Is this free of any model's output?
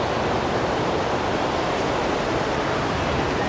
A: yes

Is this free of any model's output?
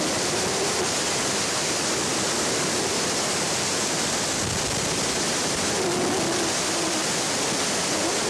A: yes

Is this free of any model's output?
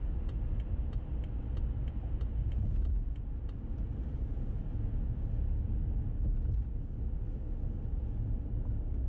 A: yes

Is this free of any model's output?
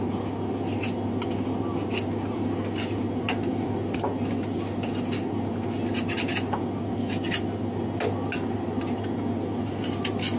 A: yes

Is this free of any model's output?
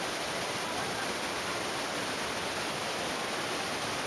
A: yes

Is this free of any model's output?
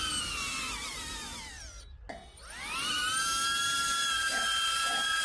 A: yes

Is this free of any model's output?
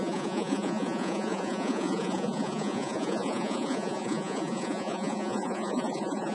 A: no